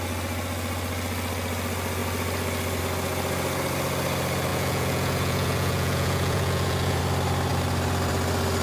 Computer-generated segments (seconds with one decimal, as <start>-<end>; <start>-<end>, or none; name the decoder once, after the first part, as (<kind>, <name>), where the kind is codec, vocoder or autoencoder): 4.5-7.0 (vocoder, Vocos)